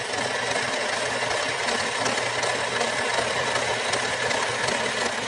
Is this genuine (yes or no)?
yes